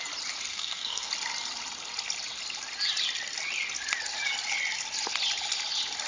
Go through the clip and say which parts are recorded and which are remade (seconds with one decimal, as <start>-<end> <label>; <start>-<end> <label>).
0.0-0.5 recorded; 0.5-1.1 remade; 1.1-6.1 recorded